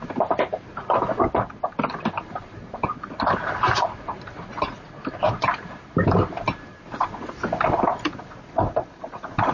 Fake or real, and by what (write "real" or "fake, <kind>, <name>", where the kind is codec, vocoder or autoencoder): fake, vocoder, BigVGAN v2